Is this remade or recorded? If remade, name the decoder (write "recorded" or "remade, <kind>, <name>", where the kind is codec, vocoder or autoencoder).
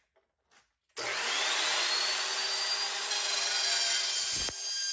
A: recorded